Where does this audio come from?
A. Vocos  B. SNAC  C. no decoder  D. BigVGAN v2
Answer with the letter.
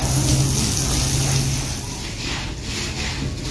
C